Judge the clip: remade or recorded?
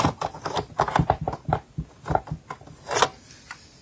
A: recorded